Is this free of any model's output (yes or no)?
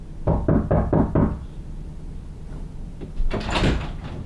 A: yes